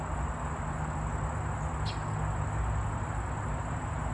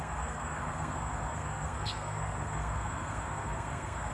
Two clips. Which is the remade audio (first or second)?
second